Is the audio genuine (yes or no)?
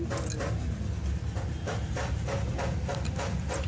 yes